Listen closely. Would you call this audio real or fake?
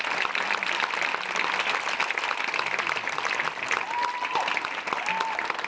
real